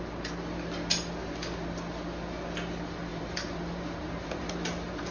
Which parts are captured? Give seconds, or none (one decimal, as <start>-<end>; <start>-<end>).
0.0-3.1